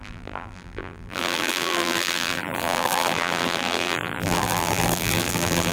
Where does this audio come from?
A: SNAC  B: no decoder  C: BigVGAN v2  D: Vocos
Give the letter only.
C